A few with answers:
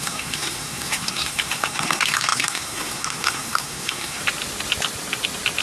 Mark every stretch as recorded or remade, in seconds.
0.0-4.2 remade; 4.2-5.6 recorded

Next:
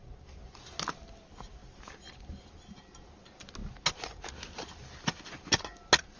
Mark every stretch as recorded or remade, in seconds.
0.0-6.2 recorded

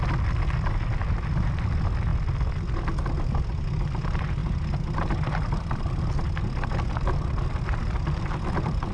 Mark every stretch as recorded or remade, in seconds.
0.0-8.9 recorded